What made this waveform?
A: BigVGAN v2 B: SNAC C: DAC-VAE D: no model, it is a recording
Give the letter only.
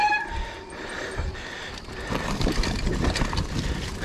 D